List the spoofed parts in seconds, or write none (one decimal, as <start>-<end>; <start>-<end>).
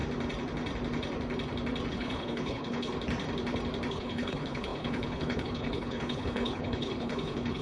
1.9-2.9; 3.9-7.6